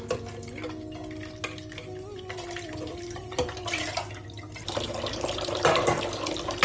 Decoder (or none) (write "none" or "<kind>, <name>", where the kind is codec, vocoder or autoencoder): none